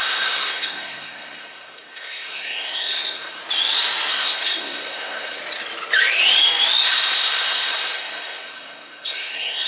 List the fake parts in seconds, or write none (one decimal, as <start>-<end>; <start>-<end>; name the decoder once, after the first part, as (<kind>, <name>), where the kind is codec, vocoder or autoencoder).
0.0-3.4 (codec, SNAC); 4.1-5.4; 6.8-9.7